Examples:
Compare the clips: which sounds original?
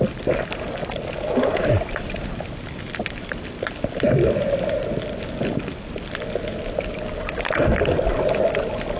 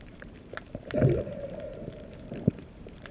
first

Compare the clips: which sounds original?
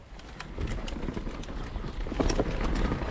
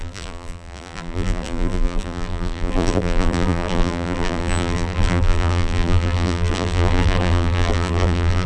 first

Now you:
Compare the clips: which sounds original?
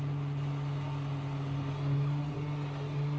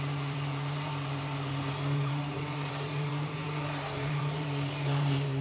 first